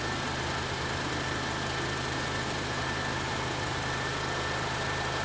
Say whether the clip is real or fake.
real